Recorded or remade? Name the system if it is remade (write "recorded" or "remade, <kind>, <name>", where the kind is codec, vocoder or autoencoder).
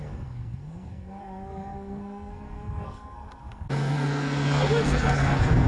remade, codec, SNAC